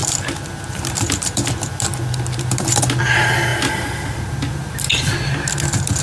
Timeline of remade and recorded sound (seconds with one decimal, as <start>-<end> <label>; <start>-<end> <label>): 0.0-2.8 remade; 2.8-3.5 recorded; 3.5-4.2 remade; 4.2-6.0 recorded